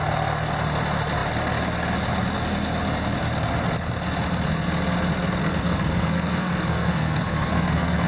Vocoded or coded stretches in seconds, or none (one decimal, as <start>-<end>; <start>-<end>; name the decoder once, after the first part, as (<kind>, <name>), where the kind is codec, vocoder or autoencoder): 5.4-8.1 (codec, SNAC)